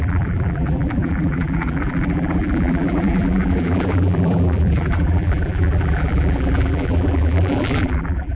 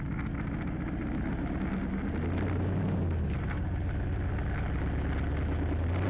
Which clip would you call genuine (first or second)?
second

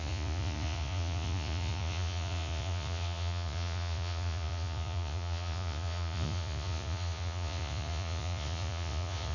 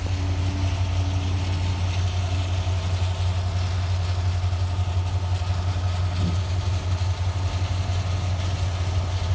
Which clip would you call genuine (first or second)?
second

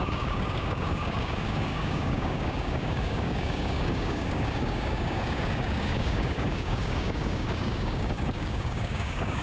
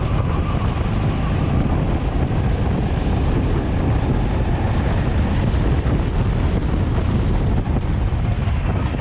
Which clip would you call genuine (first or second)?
second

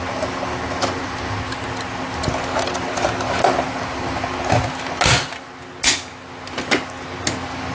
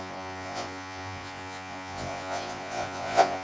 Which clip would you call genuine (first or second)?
first